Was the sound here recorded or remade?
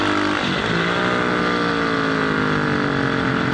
recorded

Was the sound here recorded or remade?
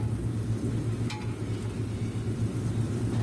recorded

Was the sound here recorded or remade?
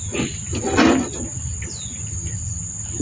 recorded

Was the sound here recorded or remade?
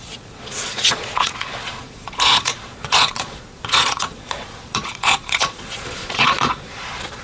remade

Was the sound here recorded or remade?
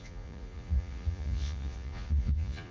remade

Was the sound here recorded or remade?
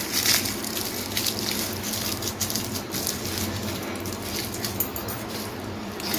recorded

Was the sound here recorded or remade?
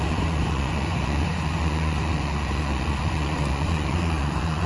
remade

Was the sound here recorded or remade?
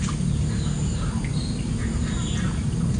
recorded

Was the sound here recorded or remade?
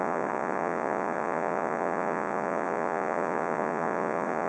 remade